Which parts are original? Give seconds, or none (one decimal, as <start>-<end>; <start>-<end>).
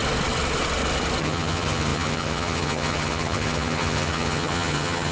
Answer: 0.0-1.2